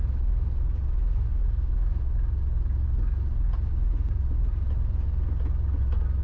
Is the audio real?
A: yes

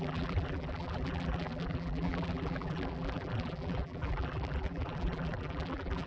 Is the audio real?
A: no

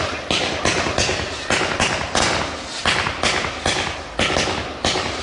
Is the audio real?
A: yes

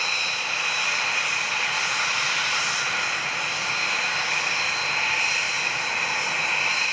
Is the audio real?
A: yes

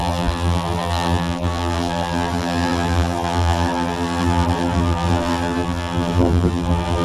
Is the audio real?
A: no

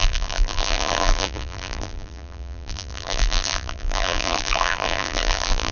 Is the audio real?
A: no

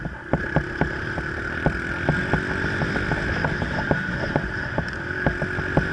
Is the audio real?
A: yes